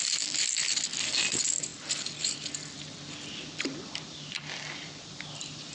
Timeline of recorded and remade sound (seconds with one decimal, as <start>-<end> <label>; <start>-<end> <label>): 0.0-1.7 recorded; 1.7-5.1 remade; 5.1-5.7 recorded